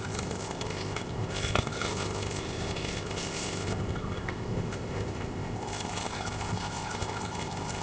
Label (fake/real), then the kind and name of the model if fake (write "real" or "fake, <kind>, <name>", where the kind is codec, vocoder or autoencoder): fake, codec, ZipCodec